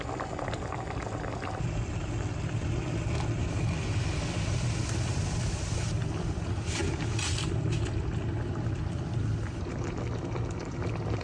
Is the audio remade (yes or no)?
yes